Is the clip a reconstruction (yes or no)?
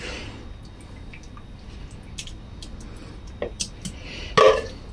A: no